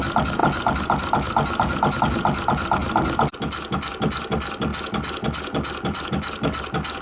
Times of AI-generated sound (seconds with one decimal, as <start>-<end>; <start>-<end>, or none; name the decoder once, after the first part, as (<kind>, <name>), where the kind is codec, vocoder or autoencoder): none